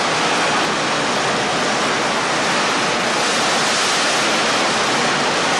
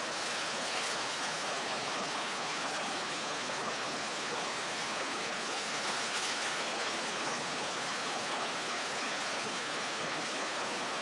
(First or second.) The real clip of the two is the first